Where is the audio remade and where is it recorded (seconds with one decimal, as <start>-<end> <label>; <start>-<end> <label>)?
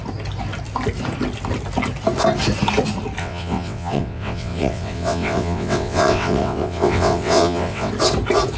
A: 0.0-3.2 recorded; 3.2-7.9 remade; 7.9-8.6 recorded